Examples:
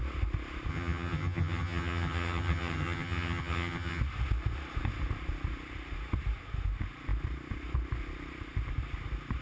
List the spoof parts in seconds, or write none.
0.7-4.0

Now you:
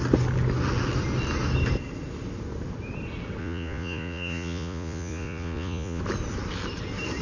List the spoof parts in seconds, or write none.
3.4-6.0

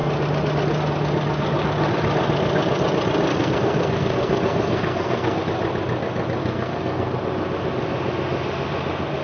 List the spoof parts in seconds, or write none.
3.3-5.4; 6.4-7.1

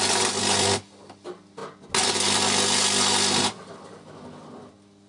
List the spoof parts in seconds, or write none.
none

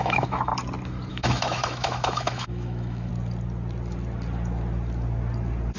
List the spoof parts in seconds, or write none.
0.0-0.5; 1.1-3.1

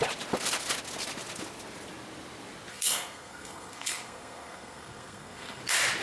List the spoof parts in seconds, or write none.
2.7-5.6